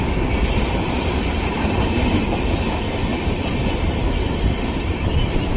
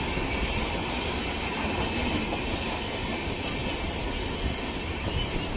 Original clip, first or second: second